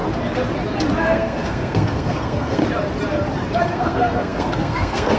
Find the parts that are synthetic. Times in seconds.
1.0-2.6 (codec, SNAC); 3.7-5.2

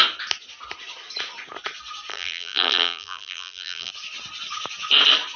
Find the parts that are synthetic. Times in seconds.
2.1-3.9 (vocoder, BigVGAN v2)

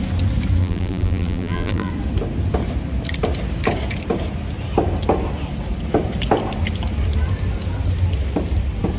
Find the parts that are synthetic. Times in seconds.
0.6-1.9 (vocoder, BigVGAN v2)

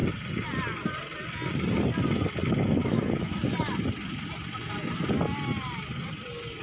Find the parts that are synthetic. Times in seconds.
2.8-3.5 (autoencoder, DAC-VAE)

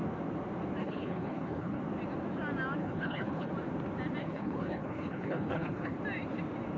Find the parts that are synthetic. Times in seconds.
0.8-1.8 (codec, HILCodec); 2.8-3.5; 4.2-6.0

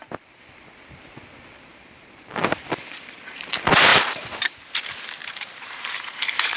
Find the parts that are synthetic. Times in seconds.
1.7-3.5 (vocoder, BigVGAN v2); 3.9-4.7; 5.2-6.6

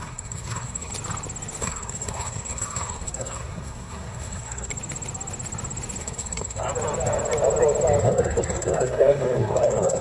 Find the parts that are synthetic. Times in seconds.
0.0-0.9 (codec, SNAC); 1.6-4.7; 6.0-6.7; 8.0-10.0

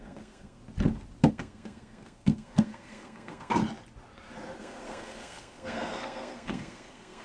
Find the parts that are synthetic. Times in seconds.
0.0-0.6 (codec, SNAC); 1.3-3.6; 4.6-7.2